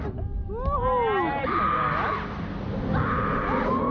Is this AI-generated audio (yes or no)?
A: no